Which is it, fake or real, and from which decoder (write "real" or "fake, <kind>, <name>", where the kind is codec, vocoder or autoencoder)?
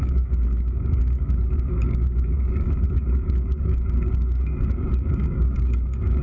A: fake, codec, DAC